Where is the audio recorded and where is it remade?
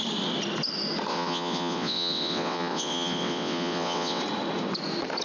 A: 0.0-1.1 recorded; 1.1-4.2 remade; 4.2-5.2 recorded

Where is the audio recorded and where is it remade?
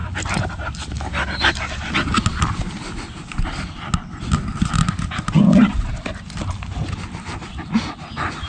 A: 0.0-8.5 recorded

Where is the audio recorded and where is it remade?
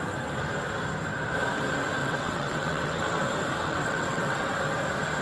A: 0.0-2.0 recorded; 2.0-3.2 remade; 3.2-3.6 recorded; 3.6-4.5 remade; 4.5-5.2 recorded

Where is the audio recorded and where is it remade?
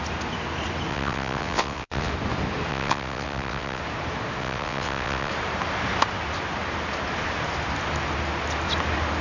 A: 0.0-0.9 recorded; 0.9-2.1 remade; 2.1-2.7 recorded; 2.7-3.8 remade; 3.8-4.4 recorded; 4.4-5.3 remade; 5.3-9.2 recorded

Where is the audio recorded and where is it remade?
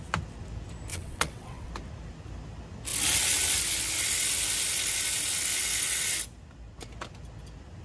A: 0.0-0.9 recorded; 0.9-1.7 remade; 1.7-7.8 recorded